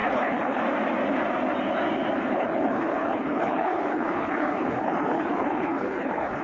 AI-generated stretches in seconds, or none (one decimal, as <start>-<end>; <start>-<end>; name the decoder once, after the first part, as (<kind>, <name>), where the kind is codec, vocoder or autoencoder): 0.0-0.6 (codec, HILCodec); 2.3-6.4